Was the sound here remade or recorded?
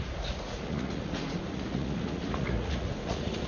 remade